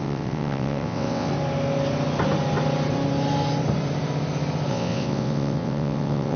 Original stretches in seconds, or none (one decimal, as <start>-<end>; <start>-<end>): 1.3-4.7